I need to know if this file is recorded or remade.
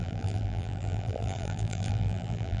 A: remade